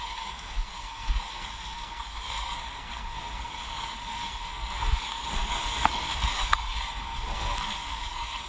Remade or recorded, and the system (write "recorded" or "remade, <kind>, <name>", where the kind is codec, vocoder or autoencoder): remade, codec, SNAC